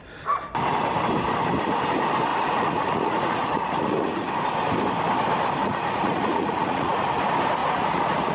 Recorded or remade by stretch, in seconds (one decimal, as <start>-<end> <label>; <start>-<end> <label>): 0.0-2.3 recorded; 2.3-4.3 remade; 4.3-5.6 recorded; 5.6-7.1 remade; 7.1-7.6 recorded; 7.6-8.3 remade